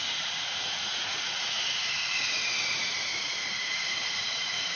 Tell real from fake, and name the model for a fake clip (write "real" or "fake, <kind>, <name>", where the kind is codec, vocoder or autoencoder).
fake, vocoder, Vocos